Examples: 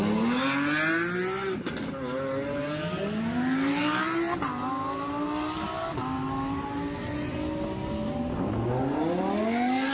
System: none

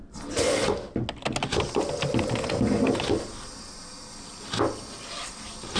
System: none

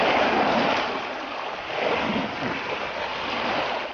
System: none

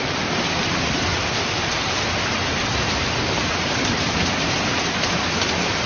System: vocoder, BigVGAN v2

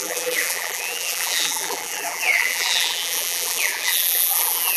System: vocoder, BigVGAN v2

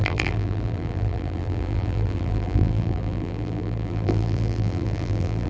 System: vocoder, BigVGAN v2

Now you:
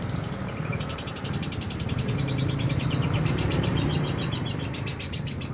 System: vocoder, BigVGAN v2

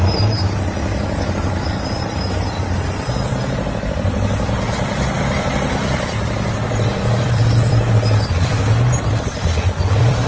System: vocoder, BigVGAN v2